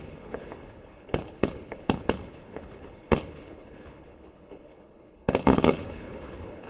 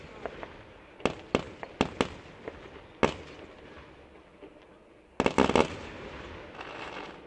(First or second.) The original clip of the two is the second